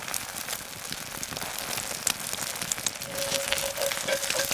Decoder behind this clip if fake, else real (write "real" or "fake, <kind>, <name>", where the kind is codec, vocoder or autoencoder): real